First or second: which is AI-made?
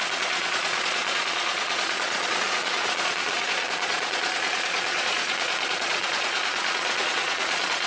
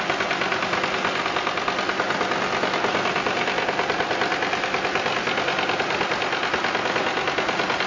first